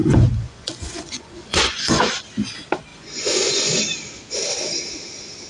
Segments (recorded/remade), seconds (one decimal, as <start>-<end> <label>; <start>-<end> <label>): 0.0-2.1 remade; 2.1-2.9 recorded; 2.9-3.8 remade; 3.8-5.5 recorded